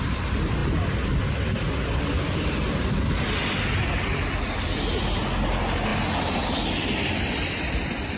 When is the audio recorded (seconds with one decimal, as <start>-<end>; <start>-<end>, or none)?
0.0-8.2